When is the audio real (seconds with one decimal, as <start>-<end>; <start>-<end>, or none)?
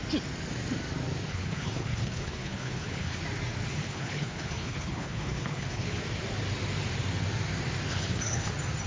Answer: 0.0-1.3; 3.2-3.7; 6.0-7.9; 8.5-8.9